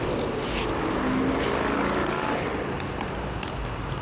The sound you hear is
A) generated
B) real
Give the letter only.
B